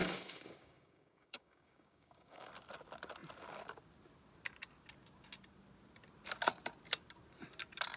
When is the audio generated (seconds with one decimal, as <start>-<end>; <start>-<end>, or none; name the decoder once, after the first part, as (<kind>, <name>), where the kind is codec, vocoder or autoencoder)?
0.0-2.5 (codec, DAC)